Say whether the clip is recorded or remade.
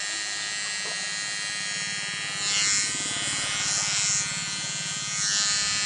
recorded